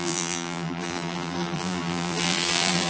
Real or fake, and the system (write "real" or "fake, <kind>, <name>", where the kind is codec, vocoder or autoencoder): fake, vocoder, BigVGAN v2